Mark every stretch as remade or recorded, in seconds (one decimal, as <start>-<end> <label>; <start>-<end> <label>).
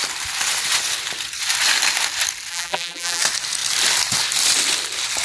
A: 0.0-2.5 recorded; 2.5-3.2 remade; 3.2-5.2 recorded